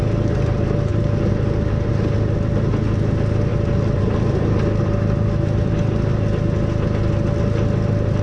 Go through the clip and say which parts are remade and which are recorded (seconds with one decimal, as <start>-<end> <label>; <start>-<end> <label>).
0.0-8.2 recorded